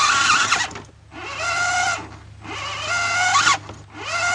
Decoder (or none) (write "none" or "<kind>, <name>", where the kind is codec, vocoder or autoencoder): none